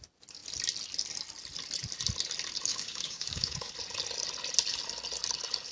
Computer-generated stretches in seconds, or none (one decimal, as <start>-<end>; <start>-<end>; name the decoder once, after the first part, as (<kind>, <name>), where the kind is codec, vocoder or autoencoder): 2.7-3.7 (codec, DAC)